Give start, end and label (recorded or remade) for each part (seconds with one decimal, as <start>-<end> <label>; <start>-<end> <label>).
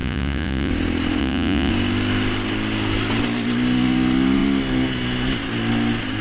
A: 0.0-0.7 remade; 0.7-1.2 recorded; 1.2-1.7 remade; 1.7-6.2 recorded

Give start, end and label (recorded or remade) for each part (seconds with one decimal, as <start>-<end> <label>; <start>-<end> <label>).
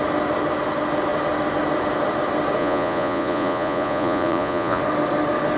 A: 0.0-2.6 recorded; 2.6-4.8 remade; 4.8-5.6 recorded